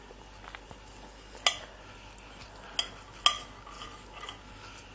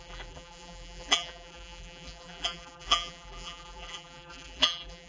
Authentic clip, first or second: first